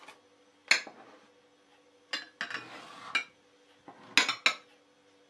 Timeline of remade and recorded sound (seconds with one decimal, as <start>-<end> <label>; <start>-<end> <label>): 0.0-5.3 recorded